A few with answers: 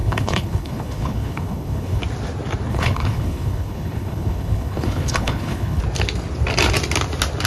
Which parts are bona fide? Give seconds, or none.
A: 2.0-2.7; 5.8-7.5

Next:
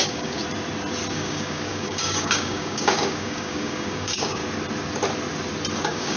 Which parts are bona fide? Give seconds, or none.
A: 0.4-1.1; 4.4-5.8

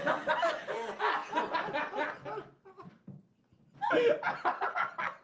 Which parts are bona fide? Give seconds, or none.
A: 0.0-5.2